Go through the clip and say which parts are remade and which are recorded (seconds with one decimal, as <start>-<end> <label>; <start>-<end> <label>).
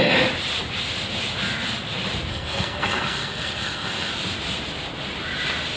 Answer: 0.0-2.3 recorded; 2.3-4.1 remade; 4.1-5.8 recorded